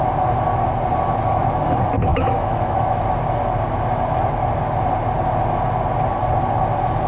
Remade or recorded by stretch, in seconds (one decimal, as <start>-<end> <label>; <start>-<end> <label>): 0.0-2.1 recorded; 2.1-3.0 remade; 3.0-7.1 recorded